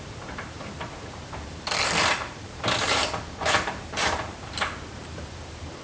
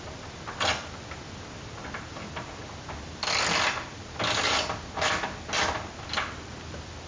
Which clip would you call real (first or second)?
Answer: second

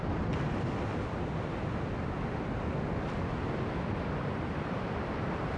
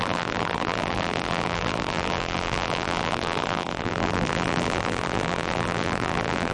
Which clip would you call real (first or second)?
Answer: first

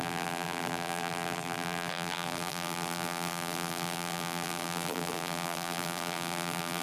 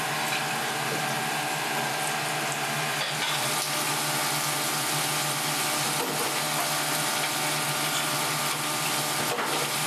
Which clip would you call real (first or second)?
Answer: second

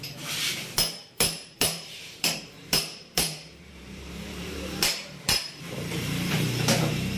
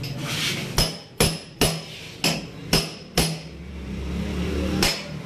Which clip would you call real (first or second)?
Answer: second